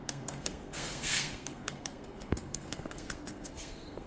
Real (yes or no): no